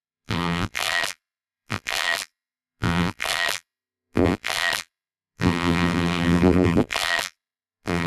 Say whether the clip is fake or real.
fake